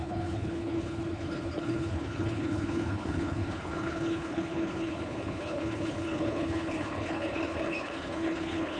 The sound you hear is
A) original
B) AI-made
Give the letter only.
B